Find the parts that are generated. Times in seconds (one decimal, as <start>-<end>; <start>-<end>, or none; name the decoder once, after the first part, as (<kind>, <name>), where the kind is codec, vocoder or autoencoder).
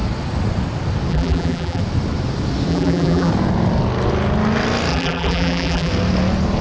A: 1.1-1.8 (vocoder, BigVGAN v2); 2.7-3.3; 4.9-5.9